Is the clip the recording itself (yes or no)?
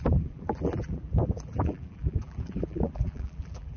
no